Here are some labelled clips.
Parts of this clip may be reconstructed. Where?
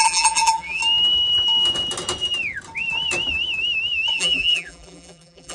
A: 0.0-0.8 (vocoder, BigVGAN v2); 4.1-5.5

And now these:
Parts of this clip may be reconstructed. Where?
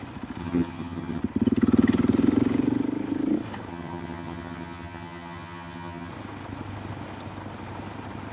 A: 0.4-1.2 (vocoder, HiFi-GAN); 3.7-6.1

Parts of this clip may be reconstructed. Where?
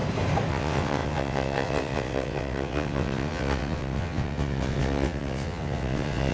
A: 0.5-6.3 (vocoder, WaveNeXt)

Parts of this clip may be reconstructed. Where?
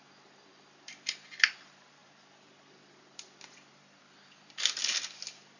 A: none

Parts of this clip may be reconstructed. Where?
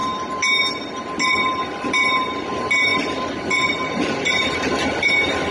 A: 1.8-2.9 (vocoder, BigVGAN v2); 3.9-5.5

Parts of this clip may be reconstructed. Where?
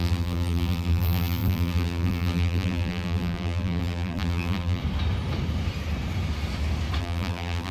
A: 0.0-4.8 (vocoder, BigVGAN v2); 7.0-7.7